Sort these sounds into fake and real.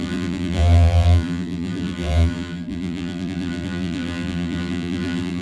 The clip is fake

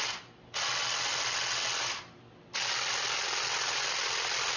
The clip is real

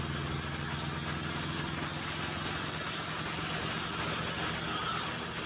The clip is real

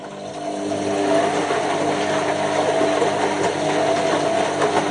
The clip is real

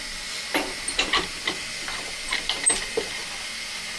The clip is real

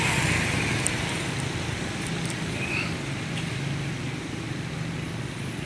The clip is real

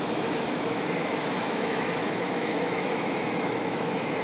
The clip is fake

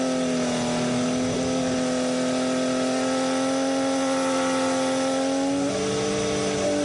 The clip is real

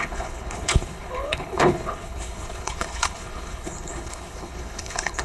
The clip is fake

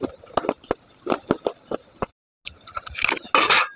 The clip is real